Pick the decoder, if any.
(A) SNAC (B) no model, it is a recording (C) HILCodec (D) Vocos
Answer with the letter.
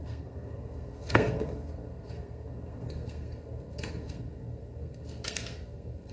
A